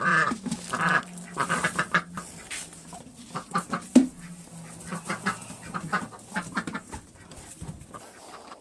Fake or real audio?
fake